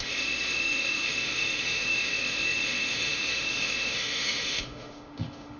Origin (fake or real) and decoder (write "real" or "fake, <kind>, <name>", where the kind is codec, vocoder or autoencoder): fake, autoencoder, DAC-VAE